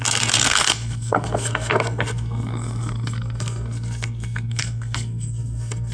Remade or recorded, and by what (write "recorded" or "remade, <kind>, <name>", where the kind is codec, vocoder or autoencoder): remade, codec, SNAC